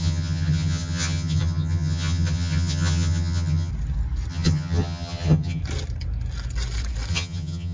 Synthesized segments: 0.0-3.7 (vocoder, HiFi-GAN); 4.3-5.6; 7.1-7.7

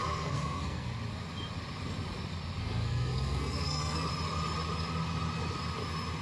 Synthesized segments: 0.0-0.9 (codec, SNAC); 2.6-4.1

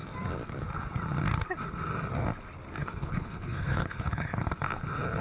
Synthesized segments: 2.8-4.4 (codec, HILCodec)

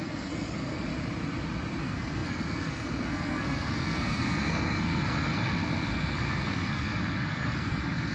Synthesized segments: 0.0-0.9 (codec, SNAC); 1.8-8.1

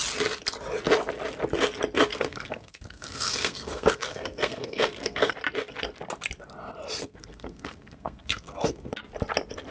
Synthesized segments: 2.1-5.3 (codec, SNAC); 7.0-8.9

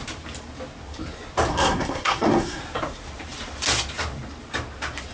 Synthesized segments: 1.5-2.6 (codec, SNAC)

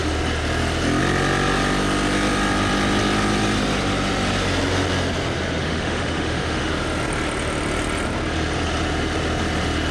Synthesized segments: 5.6-6.7 (autoencoder, DAC-VAE)

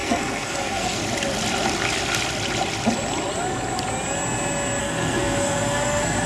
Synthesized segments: 0.0-1.0 (codec, SNAC); 4.8-6.3